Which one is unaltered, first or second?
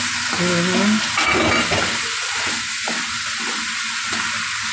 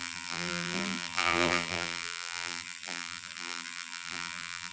first